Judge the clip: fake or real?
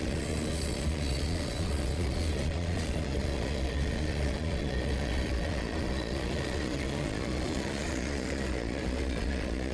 fake